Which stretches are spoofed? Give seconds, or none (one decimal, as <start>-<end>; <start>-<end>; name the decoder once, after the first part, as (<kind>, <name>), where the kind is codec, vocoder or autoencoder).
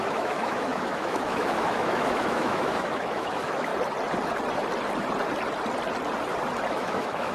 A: 0.0-3.7 (autoencoder, DAC-VAE); 6.7-7.3